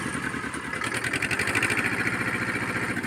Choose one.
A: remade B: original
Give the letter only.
B